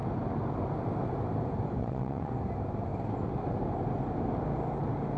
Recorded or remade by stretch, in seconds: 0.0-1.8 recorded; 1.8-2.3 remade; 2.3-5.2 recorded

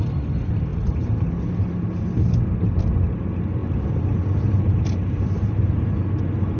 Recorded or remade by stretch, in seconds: 0.0-0.7 recorded; 0.7-1.2 remade; 1.2-3.6 recorded; 3.6-6.0 remade; 6.0-6.6 recorded